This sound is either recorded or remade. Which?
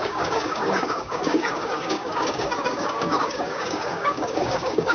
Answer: remade